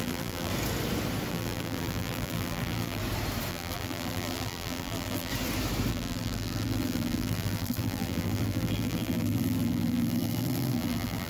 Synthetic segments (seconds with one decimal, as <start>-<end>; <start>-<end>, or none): 0.0-0.5; 1.3-3.0; 3.5-5.3; 5.9-11.3